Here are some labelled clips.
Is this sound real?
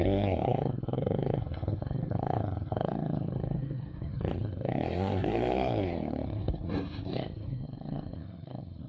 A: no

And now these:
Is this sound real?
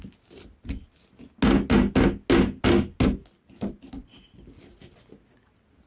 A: yes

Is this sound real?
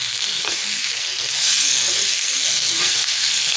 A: no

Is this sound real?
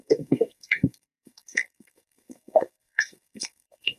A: no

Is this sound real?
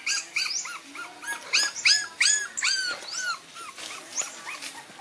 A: yes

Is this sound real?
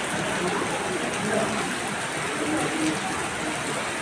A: yes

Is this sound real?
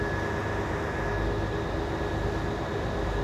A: yes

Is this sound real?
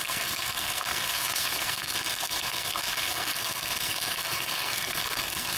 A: no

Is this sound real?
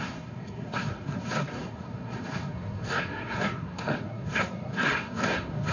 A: no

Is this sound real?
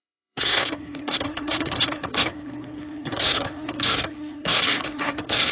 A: no